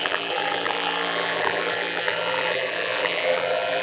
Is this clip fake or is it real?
fake